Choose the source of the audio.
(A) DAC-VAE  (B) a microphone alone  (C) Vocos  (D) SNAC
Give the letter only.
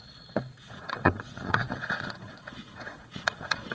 C